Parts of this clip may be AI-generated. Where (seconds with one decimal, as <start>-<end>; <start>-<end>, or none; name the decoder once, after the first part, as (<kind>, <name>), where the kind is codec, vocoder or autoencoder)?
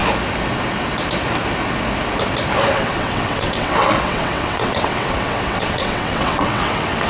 2.7-7.1 (vocoder, WaveNeXt)